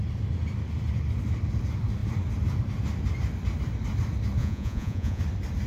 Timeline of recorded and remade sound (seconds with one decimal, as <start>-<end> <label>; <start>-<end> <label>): 0.0-4.4 recorded; 4.4-5.2 remade; 5.2-5.7 recorded

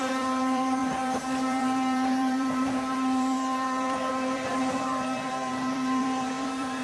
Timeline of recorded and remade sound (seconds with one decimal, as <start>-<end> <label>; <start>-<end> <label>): 0.0-6.8 remade

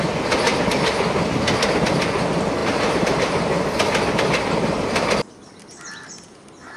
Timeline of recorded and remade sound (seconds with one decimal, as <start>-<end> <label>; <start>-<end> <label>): 0.0-2.6 recorded; 2.6-3.7 remade; 3.7-6.8 recorded